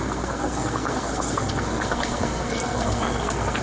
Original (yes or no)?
no